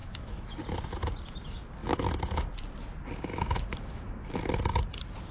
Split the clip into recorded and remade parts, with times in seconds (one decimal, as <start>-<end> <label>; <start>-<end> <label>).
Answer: 0.0-0.6 remade; 0.6-1.8 recorded; 1.8-2.5 remade; 2.5-3.3 recorded; 3.3-4.6 remade; 4.6-5.3 recorded